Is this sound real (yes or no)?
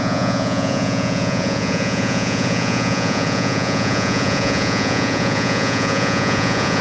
no